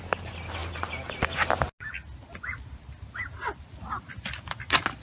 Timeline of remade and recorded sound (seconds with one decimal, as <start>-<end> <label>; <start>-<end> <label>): 0.0-5.0 recorded